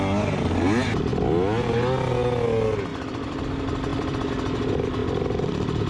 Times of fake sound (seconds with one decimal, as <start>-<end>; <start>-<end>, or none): 2.9-3.4; 3.9-4.6